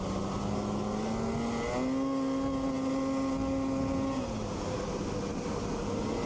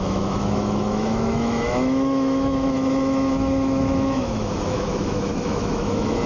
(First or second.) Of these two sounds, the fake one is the second